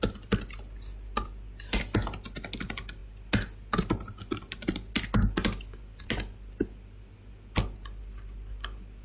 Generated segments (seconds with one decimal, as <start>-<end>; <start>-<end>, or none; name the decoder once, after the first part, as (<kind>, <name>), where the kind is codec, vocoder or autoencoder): none